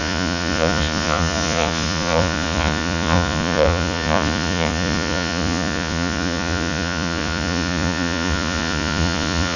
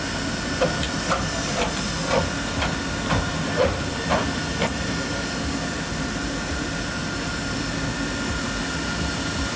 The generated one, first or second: first